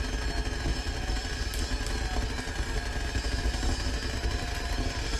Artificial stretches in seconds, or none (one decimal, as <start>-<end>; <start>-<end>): none